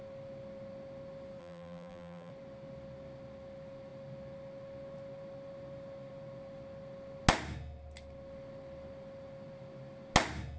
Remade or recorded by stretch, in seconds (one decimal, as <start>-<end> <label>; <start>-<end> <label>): 0.0-1.4 recorded; 1.4-2.3 remade; 2.3-10.6 recorded